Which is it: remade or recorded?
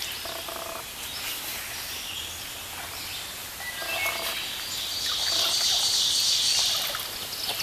recorded